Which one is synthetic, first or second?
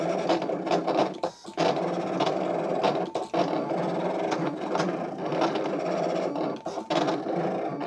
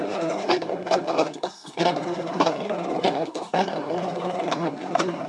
second